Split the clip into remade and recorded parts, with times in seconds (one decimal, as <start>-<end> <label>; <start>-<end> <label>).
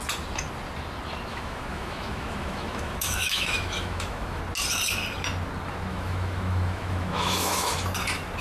0.0-1.3 recorded; 1.3-4.4 remade; 4.4-5.9 recorded; 5.9-7.7 remade; 7.7-8.4 recorded